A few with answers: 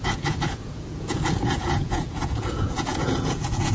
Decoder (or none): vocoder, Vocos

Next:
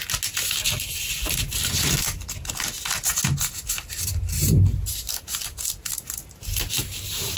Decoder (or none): none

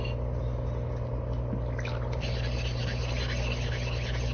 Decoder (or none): none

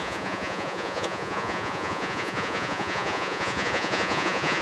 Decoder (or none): vocoder, Vocos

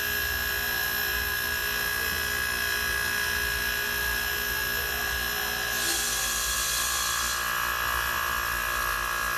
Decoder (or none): none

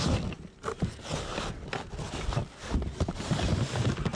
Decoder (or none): none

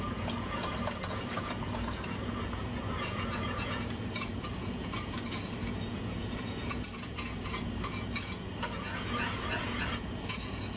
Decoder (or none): vocoder, Vocos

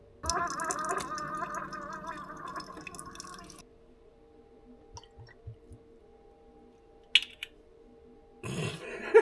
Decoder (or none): none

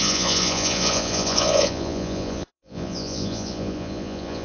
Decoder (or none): vocoder, Vocos